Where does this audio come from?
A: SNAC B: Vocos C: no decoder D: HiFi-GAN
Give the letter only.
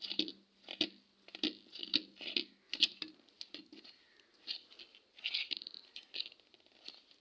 C